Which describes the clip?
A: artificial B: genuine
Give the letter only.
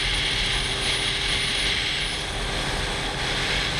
B